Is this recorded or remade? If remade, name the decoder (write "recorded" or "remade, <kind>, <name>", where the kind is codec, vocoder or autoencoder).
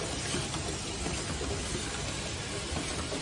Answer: recorded